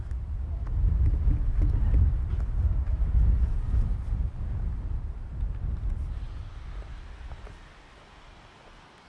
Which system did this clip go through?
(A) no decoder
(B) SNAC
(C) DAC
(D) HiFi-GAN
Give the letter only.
A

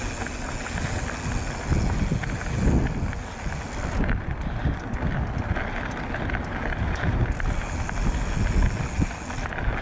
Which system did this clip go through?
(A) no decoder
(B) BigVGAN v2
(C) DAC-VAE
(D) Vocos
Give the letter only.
A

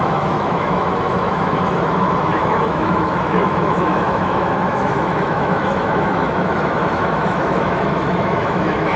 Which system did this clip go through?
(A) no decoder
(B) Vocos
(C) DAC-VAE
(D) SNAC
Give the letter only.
C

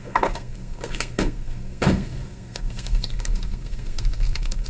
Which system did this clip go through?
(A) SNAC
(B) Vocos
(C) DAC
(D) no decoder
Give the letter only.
A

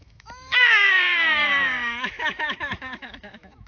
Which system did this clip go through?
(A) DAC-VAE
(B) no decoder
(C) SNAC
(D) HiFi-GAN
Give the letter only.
A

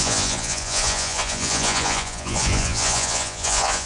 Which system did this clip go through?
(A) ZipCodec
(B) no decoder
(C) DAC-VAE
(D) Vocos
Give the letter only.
D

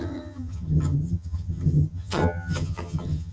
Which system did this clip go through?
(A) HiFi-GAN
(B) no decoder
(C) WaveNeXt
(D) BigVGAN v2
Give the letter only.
A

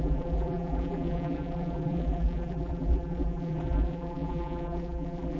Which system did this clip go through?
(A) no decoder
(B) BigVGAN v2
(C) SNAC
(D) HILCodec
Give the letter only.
B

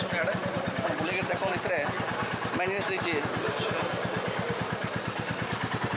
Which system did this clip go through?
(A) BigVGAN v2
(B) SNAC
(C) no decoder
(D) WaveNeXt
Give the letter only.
C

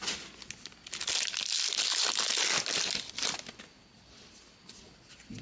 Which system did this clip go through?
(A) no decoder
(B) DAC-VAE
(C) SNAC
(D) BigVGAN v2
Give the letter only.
A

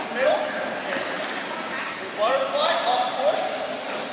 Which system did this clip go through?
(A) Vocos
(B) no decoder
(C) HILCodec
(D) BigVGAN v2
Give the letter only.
B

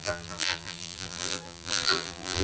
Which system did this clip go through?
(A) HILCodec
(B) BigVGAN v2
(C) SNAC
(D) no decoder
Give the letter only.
B